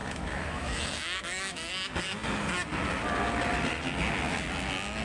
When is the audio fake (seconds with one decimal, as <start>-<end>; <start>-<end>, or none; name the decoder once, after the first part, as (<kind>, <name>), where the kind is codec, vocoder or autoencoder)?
0.0-1.7 (autoencoder, DAC-VAE)